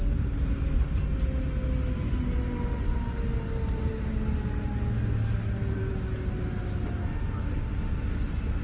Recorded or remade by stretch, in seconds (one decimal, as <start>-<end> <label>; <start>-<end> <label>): 0.0-8.6 recorded